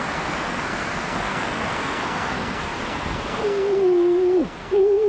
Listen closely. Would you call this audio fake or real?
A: fake